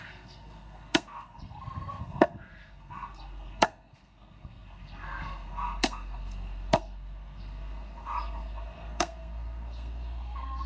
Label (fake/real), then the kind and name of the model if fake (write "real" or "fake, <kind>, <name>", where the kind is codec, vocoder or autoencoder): fake, codec, SNAC